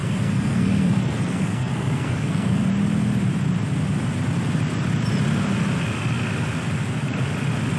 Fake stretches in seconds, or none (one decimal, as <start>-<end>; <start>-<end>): 0.0-2.6